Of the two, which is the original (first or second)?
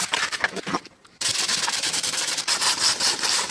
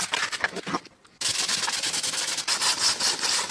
second